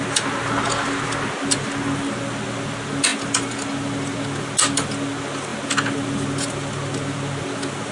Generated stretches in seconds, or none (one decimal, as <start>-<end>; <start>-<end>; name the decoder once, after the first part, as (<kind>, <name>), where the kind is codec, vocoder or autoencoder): none